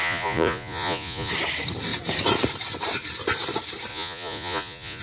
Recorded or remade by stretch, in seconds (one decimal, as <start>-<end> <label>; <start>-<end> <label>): 0.0-1.3 remade; 1.3-3.9 recorded; 3.9-5.0 remade